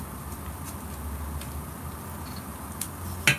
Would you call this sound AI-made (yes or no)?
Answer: no